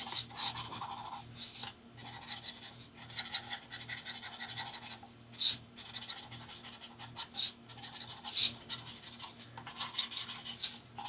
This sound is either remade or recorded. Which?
recorded